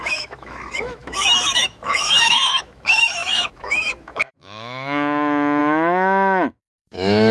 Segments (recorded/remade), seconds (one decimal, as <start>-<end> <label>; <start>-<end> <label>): 0.0-7.3 remade